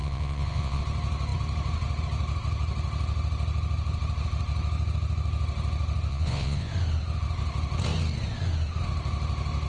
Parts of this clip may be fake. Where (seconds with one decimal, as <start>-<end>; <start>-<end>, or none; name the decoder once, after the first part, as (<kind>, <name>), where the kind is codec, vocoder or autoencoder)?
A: 0.0-0.8 (vocoder, Vocos); 6.1-6.7